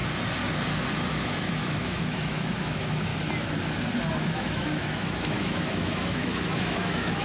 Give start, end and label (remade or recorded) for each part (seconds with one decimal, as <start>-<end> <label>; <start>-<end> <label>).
0.0-1.1 recorded; 1.1-3.1 remade; 3.1-4.1 recorded; 4.1-7.2 remade